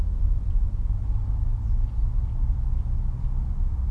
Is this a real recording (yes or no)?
yes